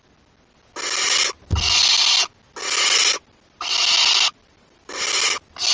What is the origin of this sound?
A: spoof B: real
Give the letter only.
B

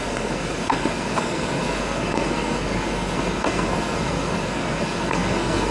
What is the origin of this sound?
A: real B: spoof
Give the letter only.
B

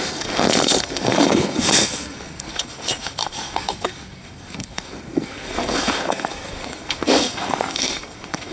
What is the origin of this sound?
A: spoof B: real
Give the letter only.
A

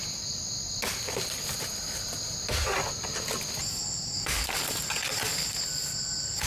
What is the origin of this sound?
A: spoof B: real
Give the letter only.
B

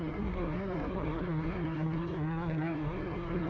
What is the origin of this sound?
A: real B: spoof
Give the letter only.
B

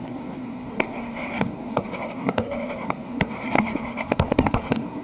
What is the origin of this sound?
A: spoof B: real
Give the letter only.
A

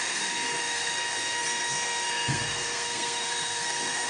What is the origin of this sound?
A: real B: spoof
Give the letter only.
B